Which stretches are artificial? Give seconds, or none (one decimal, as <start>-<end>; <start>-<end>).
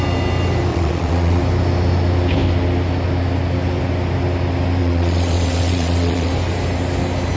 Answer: 0.7-1.4; 4.8-6.3